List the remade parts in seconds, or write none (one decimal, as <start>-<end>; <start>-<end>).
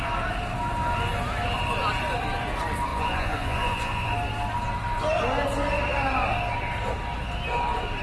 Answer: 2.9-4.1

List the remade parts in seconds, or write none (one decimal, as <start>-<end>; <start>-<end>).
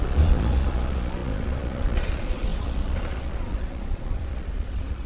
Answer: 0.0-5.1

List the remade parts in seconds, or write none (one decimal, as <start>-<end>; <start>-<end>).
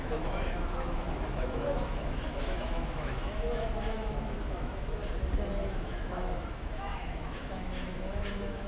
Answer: 0.0-5.0; 5.6-8.7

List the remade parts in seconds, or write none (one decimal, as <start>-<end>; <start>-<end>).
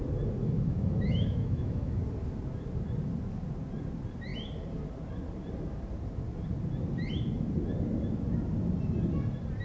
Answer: 0.4-2.0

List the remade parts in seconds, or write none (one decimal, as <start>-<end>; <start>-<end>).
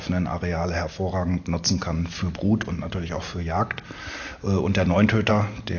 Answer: none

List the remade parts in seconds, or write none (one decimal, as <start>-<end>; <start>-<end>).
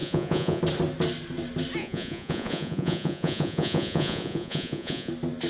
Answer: 0.0-0.6; 1.8-5.1